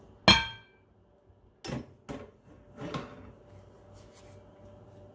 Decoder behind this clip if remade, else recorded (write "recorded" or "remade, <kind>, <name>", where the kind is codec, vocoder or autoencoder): recorded